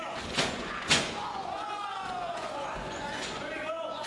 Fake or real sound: fake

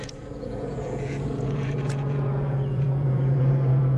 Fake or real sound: fake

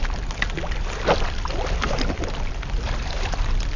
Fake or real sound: real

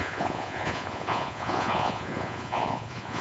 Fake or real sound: fake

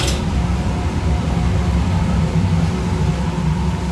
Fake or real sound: real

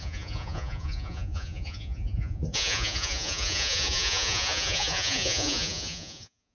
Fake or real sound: fake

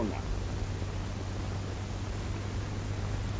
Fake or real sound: real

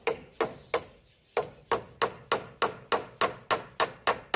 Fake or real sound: real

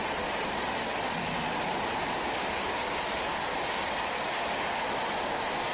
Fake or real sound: real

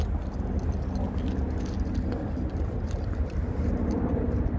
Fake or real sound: real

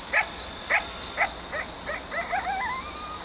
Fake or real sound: real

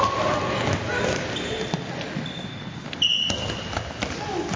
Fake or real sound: real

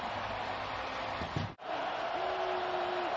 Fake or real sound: real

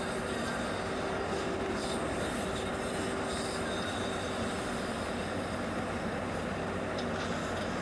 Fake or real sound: real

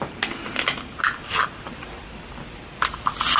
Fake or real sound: real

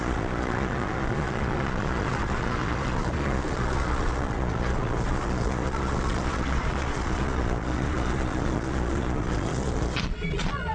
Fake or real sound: fake